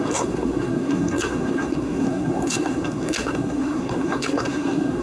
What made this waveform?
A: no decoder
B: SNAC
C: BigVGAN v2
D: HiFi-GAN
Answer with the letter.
B